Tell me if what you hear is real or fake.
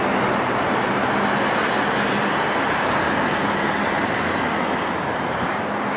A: real